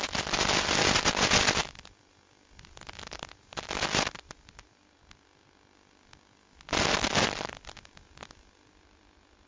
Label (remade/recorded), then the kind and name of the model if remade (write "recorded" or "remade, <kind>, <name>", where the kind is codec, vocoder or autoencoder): recorded